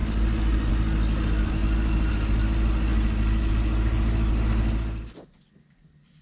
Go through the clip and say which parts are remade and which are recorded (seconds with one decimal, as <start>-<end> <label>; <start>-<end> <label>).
0.0-6.2 recorded